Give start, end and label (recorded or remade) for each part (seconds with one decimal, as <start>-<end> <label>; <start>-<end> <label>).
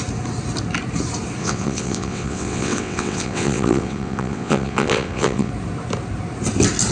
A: 0.0-1.4 recorded; 1.4-5.5 remade; 5.5-6.9 recorded